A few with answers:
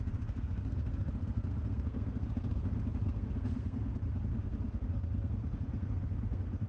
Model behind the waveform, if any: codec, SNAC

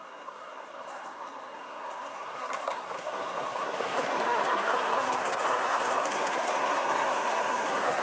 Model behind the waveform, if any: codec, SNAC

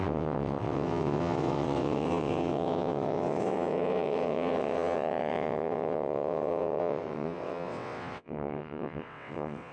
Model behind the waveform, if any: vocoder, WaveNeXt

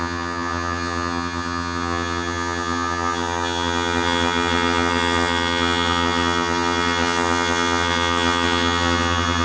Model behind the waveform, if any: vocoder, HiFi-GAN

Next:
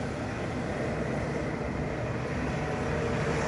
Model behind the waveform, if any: none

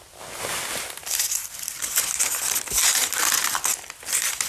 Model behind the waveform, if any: none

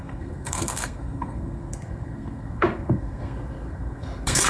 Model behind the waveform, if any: codec, SNAC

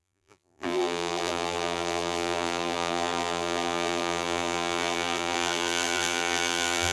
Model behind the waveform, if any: vocoder, BigVGAN v2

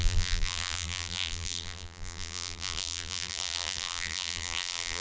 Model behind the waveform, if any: vocoder, BigVGAN v2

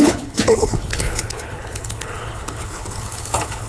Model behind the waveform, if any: codec, HILCodec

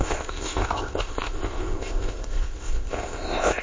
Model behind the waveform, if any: codec, ZipCodec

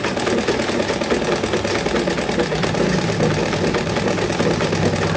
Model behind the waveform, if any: none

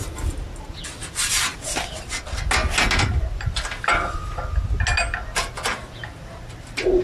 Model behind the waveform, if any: none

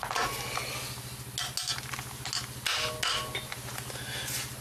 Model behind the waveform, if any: none